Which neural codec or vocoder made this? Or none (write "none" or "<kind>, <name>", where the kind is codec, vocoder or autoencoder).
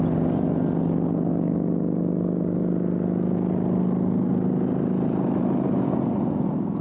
none